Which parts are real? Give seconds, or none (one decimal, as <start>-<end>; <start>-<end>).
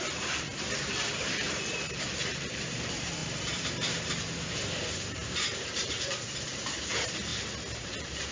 7.3-7.8